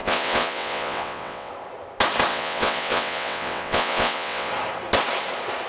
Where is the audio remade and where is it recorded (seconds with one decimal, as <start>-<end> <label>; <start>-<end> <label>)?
0.0-1.5 remade; 1.5-2.3 recorded; 2.3-4.5 remade; 4.5-5.7 recorded